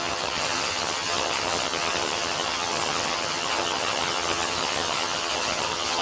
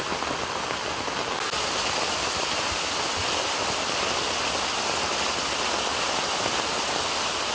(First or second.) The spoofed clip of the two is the first